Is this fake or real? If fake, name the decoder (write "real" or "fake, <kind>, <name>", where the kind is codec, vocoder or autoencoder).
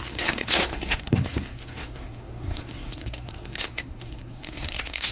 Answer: fake, codec, SNAC